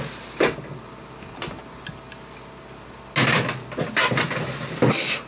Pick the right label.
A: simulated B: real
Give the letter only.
B